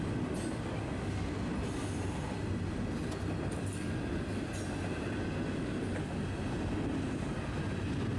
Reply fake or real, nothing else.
real